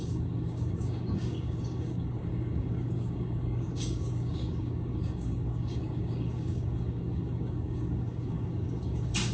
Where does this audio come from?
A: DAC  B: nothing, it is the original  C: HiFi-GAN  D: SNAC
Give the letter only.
A